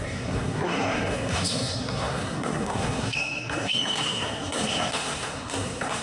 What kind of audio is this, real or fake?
fake